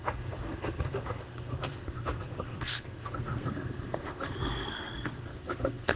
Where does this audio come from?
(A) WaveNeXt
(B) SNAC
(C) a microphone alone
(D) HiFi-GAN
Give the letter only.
B